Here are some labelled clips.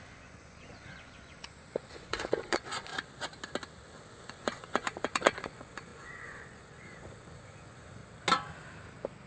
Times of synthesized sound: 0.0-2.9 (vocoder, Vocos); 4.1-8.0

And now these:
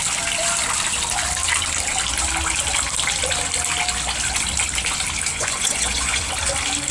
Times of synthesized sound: 5.3-6.3 (vocoder, Vocos)

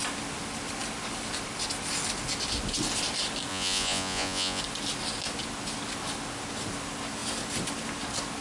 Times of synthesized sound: 3.5-4.6 (vocoder, Vocos)

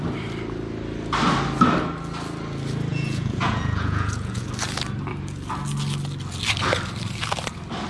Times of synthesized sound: 2.9-4.5 (vocoder, Vocos)

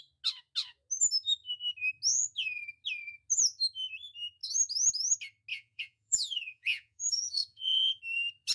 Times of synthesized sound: 5.5-8.0 (vocoder, Vocos)